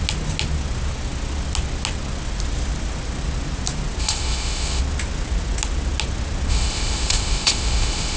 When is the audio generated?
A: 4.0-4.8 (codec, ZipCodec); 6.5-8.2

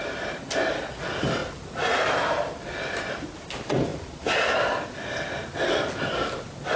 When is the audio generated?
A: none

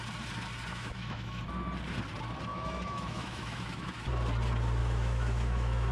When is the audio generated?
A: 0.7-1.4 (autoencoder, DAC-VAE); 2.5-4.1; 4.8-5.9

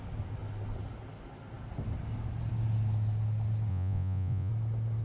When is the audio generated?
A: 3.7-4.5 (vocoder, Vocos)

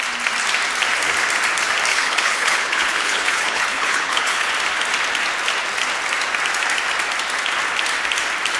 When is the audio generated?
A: 1.9-4.5 (codec, HILCodec)